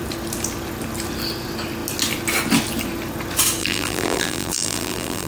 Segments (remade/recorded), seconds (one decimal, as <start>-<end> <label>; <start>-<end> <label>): 0.0-3.6 recorded; 3.6-5.3 remade